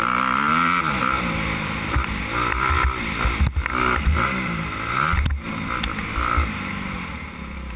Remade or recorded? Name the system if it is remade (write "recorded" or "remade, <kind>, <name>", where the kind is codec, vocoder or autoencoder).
recorded